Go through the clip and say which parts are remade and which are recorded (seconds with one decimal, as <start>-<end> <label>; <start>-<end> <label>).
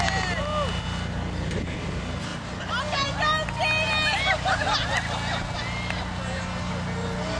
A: 0.0-7.4 recorded